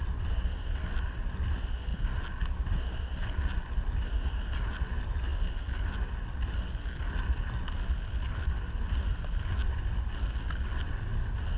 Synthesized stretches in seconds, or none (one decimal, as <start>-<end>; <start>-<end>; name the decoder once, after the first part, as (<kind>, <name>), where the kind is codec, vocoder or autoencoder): none